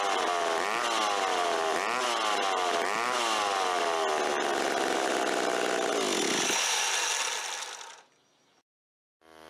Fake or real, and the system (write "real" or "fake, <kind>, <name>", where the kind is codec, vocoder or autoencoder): real